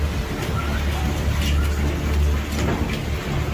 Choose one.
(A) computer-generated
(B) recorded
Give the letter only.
B